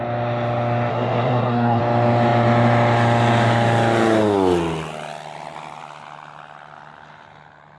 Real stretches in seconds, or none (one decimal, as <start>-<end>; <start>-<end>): 0.0-0.9; 1.8-7.8